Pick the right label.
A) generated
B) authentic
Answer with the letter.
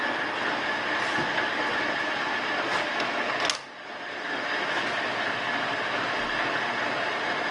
B